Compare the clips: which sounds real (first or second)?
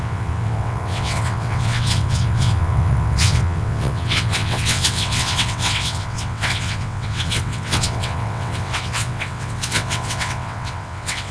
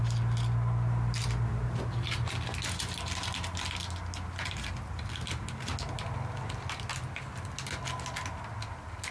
second